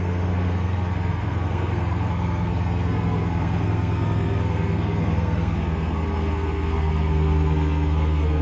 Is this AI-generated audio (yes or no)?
yes